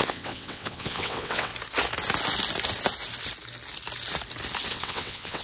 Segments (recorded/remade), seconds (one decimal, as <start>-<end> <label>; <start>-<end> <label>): 0.0-1.5 remade; 1.5-4.7 recorded; 4.7-5.4 remade